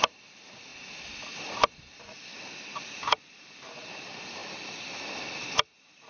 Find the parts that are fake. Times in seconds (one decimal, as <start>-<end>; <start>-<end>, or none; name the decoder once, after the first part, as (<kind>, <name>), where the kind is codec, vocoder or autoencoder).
none